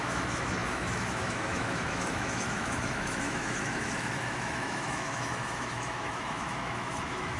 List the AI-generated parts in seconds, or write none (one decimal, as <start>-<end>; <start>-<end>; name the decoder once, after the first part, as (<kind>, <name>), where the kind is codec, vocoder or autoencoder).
0.0-7.4 (autoencoder, DAC-VAE)